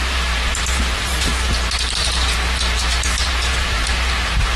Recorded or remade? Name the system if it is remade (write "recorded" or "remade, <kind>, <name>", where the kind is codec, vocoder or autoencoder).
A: remade, vocoder, BigVGAN v2